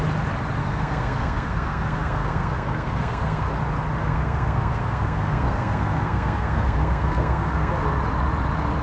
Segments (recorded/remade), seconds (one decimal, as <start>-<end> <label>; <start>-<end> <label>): 0.0-0.6 recorded; 0.6-3.5 remade; 3.5-4.0 recorded; 4.0-7.7 remade; 7.7-8.8 recorded